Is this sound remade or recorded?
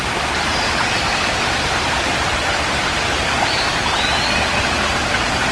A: recorded